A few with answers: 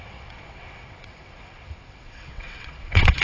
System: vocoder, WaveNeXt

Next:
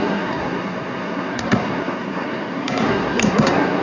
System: codec, SNAC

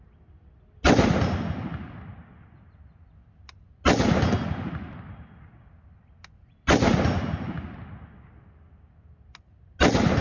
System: none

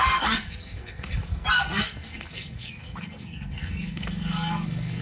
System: codec, SNAC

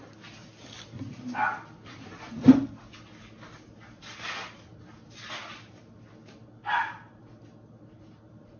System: none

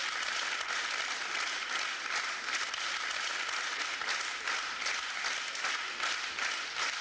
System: none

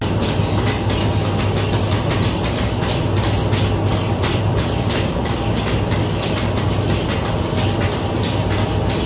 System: none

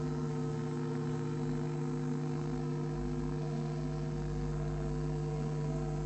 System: codec, SNAC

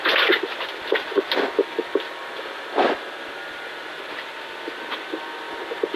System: none